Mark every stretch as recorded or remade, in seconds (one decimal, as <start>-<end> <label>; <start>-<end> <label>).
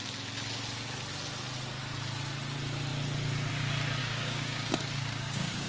0.0-4.0 recorded; 4.0-5.7 remade